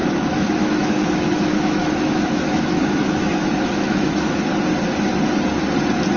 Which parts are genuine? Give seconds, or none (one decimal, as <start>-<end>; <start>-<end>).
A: 4.5-6.2